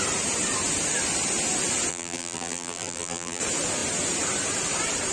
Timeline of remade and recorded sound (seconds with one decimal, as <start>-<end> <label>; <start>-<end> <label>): 0.0-1.9 recorded; 1.9-3.4 remade; 3.4-5.1 recorded